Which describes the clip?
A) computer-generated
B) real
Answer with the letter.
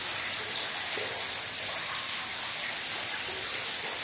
B